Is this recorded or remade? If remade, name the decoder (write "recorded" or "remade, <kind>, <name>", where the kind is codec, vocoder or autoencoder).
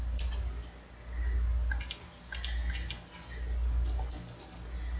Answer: recorded